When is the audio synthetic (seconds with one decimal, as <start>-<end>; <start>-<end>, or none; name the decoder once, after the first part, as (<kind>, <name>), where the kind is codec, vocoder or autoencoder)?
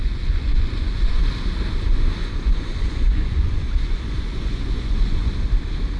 0.0-1.3 (vocoder, Vocos); 2.2-5.3